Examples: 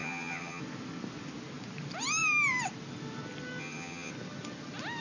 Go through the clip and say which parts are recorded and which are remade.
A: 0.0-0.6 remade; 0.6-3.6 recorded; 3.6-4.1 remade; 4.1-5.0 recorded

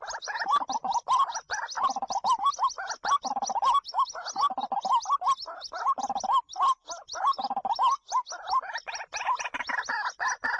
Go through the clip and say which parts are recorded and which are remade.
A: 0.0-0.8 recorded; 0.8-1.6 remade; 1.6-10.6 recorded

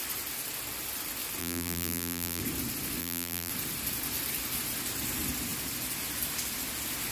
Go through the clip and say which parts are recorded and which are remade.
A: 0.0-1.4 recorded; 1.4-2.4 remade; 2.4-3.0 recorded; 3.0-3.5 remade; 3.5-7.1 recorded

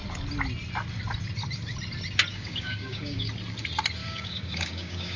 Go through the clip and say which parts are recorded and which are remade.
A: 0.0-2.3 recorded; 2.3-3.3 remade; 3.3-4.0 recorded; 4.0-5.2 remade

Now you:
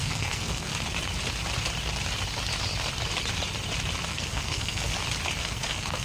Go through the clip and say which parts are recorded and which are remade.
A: 0.0-0.7 remade; 0.7-4.1 recorded; 4.1-4.9 remade; 4.9-5.4 recorded; 5.4-6.0 remade

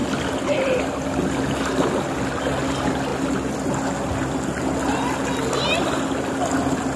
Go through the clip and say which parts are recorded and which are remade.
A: 0.0-7.0 recorded

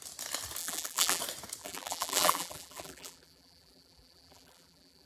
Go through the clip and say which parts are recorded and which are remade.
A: 0.0-0.6 recorded; 0.6-1.2 remade; 1.2-1.6 recorded; 1.6-5.1 remade